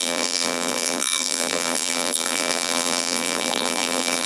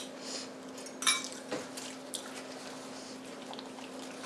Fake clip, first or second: first